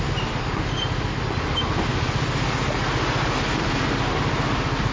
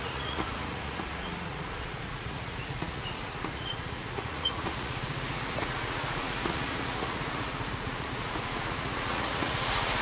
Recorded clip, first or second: first